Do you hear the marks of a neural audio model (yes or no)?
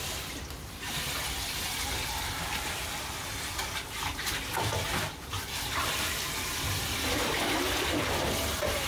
yes